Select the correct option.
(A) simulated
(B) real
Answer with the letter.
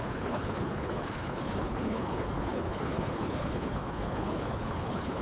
A